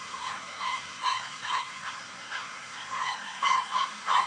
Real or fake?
fake